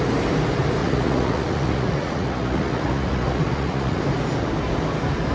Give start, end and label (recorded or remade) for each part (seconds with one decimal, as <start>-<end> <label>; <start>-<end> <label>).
0.0-0.8 recorded; 0.8-4.0 remade; 4.0-5.3 recorded

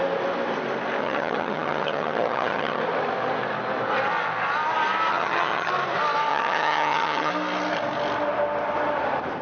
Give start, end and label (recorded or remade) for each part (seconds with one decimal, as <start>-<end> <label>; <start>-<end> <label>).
0.0-1.0 recorded; 1.0-2.8 remade; 2.8-5.1 recorded; 5.1-5.7 remade; 5.7-6.3 recorded; 6.3-7.3 remade; 7.3-9.4 recorded

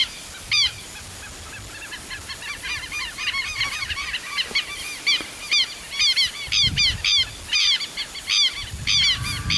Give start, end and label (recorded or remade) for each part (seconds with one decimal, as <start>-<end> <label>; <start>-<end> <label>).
0.0-1.0 remade; 1.0-9.6 recorded

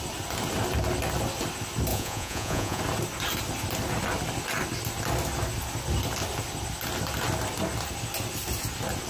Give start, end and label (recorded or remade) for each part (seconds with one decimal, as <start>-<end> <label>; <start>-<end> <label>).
0.0-1.9 recorded; 1.9-2.8 remade; 2.8-9.1 recorded

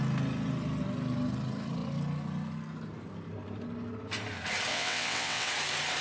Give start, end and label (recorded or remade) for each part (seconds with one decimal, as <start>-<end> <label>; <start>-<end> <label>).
0.0-4.7 recorded; 4.7-5.5 remade; 5.5-6.0 recorded